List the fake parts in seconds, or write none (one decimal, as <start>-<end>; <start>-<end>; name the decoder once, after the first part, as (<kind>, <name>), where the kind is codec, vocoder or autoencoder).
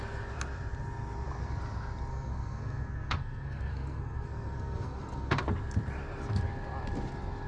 2.1-5.4 (codec, SNAC)